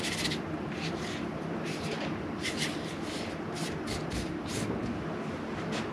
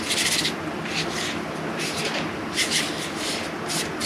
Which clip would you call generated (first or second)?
first